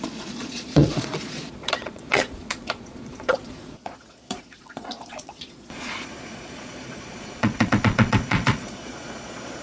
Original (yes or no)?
no